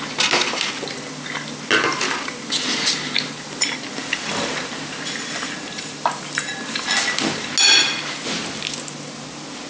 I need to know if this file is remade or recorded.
recorded